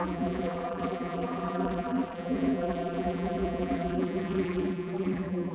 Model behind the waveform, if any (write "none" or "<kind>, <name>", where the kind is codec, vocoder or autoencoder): vocoder, BigVGAN v2